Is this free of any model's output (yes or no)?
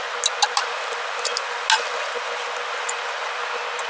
yes